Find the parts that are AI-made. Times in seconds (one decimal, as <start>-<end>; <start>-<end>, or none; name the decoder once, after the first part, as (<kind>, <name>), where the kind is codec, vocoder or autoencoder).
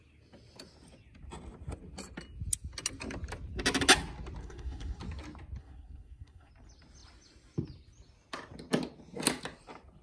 4.4-5.0 (codec, SNAC); 5.6-6.5